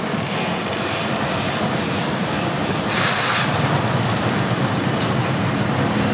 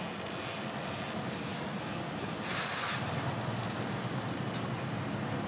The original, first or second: second